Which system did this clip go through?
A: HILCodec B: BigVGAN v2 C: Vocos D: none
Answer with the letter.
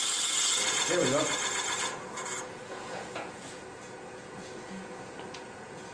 C